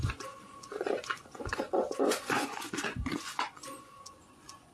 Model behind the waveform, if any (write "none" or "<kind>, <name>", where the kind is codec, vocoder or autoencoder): vocoder, Vocos